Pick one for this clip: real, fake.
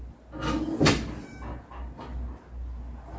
real